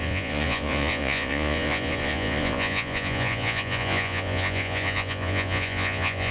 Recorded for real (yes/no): no